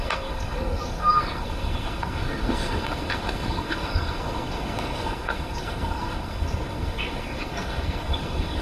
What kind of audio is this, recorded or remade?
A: remade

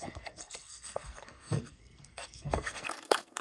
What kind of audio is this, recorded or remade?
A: remade